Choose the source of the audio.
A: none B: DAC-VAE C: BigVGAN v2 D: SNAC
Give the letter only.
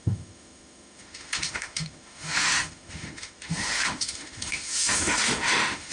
B